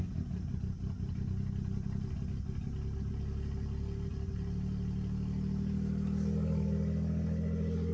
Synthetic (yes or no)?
no